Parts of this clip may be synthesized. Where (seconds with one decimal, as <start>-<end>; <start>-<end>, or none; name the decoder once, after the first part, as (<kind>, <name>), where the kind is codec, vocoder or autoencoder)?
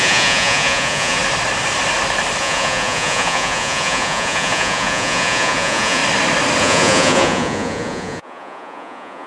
0.0-1.2 (vocoder, Vocos); 2.4-6.0; 6.6-9.3